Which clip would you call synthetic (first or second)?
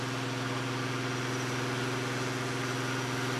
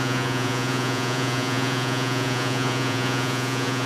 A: second